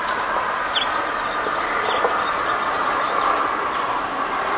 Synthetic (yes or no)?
no